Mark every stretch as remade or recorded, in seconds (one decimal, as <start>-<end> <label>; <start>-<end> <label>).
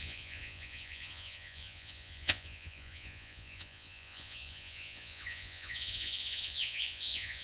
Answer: 0.0-7.4 remade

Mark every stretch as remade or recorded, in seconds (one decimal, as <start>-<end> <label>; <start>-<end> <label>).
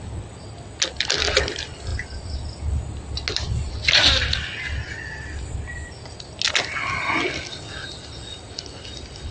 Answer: 0.0-9.3 recorded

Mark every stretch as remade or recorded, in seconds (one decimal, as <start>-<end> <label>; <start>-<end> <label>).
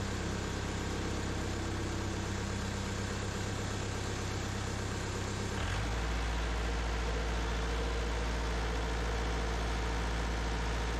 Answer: 0.0-11.0 recorded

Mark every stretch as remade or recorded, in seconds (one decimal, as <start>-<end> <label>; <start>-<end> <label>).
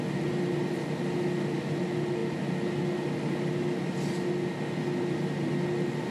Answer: 0.0-6.1 recorded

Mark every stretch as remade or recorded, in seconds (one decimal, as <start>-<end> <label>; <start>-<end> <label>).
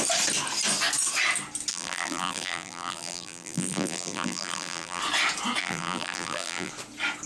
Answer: 0.0-1.7 recorded; 1.7-5.0 remade; 5.0-5.6 recorded; 5.6-6.7 remade; 6.7-7.3 recorded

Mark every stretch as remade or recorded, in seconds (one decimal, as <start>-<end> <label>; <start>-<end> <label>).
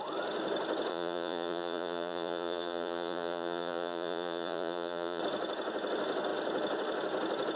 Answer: 0.0-0.9 recorded; 0.9-5.2 remade; 5.2-7.6 recorded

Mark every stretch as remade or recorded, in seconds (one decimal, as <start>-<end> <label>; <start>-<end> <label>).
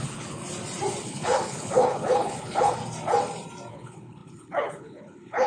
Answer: 0.0-0.4 remade; 0.4-1.0 recorded; 1.0-2.8 remade; 2.8-3.7 recorded; 3.7-5.5 remade